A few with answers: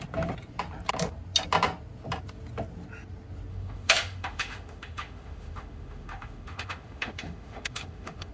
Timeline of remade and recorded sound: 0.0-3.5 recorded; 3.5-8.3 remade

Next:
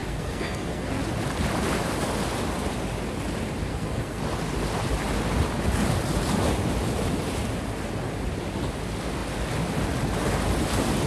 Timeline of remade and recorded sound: 0.0-1.0 remade; 1.0-3.7 recorded; 3.7-4.2 remade; 4.2-11.1 recorded

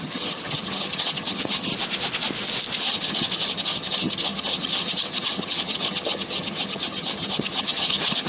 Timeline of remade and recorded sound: 0.0-1.7 remade; 1.7-2.8 recorded; 2.8-8.3 remade

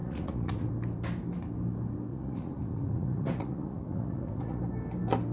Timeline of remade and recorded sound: 0.0-0.7 remade; 0.7-2.1 recorded; 2.1-4.6 remade; 4.6-5.3 recorded

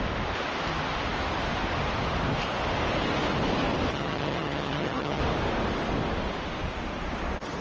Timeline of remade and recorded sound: 0.0-3.9 recorded; 3.9-5.2 remade; 5.2-7.6 recorded

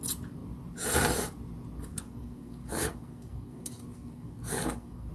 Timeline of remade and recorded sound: 0.0-1.9 recorded; 1.9-5.1 remade

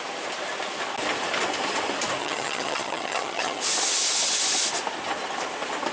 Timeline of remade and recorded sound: 0.0-2.2 recorded; 2.2-3.6 remade; 3.6-5.9 recorded

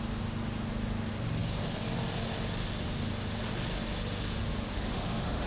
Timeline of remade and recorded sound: 0.0-4.7 recorded; 4.7-5.5 remade